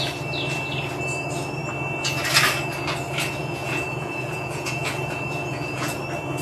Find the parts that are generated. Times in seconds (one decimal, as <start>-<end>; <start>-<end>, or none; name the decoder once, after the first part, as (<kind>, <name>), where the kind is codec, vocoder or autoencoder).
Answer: 3.4-6.0 (vocoder, Vocos)